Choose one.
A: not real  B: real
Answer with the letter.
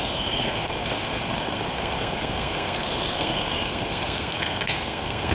A